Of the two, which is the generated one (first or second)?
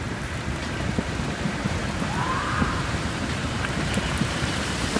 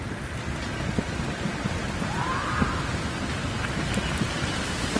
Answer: first